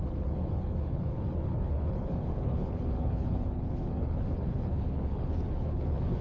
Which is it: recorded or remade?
remade